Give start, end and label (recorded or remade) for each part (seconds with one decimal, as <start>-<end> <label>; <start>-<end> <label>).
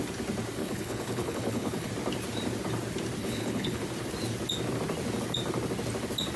0.0-0.6 recorded; 0.6-1.9 remade; 1.9-3.2 recorded; 3.2-3.8 remade; 3.8-6.4 recorded